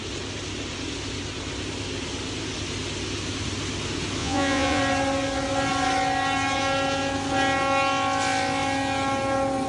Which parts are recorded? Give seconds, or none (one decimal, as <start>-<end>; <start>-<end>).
0.0-4.2; 4.8-9.7